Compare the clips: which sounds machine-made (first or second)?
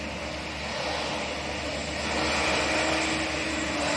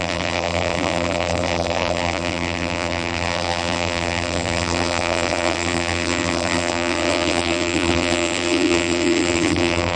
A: second